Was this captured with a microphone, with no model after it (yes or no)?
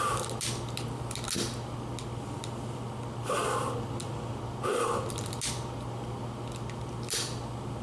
yes